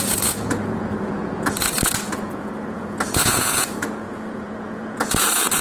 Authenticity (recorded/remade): remade